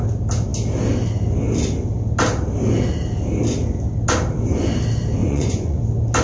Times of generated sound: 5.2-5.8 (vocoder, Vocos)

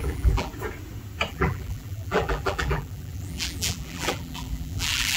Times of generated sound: 0.0-0.5 (vocoder, BigVGAN v2); 1.3-5.2

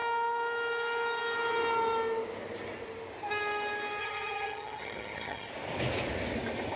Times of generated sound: 4.0-5.5 (vocoder, HiFi-GAN)

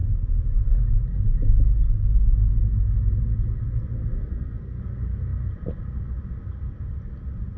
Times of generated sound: 4.2-4.8 (codec, SNAC)

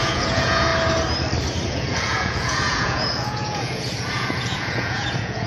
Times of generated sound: 0.0-0.7 (vocoder, Vocos); 1.7-5.5

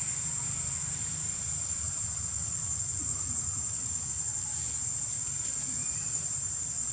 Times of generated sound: 3.1-4.0 (vocoder, BigVGAN v2); 5.8-6.5

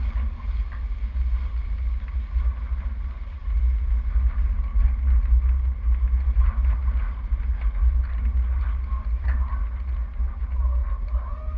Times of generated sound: none

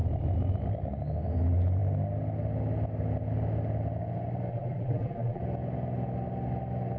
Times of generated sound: 4.5-5.4 (vocoder, BigVGAN v2)